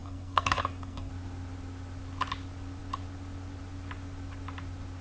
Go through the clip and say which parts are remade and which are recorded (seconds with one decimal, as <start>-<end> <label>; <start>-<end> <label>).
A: 0.0-1.1 remade; 1.1-5.0 recorded